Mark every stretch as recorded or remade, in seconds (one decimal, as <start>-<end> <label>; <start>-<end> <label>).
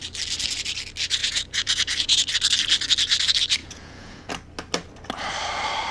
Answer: 0.0-1.2 recorded; 1.2-2.3 remade; 2.3-3.6 recorded; 3.6-4.3 remade; 4.3-5.9 recorded